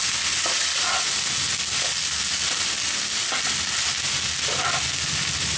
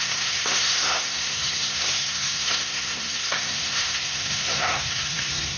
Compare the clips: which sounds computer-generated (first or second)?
second